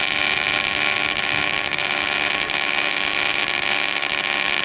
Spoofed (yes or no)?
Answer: no